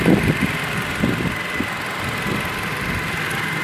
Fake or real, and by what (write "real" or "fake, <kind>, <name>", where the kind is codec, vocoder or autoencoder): real